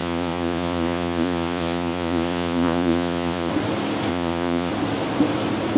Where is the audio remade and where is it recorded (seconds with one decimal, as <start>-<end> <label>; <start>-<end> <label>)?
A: 0.0-3.5 remade; 3.5-4.1 recorded; 4.1-4.7 remade; 4.7-5.8 recorded